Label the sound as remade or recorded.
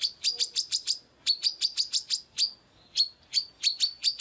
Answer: recorded